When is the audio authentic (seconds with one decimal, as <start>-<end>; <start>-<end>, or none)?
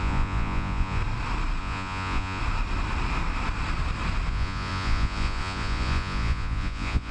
1.0-1.6; 2.4-4.3